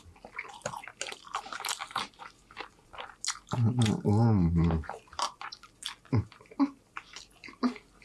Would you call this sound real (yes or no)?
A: yes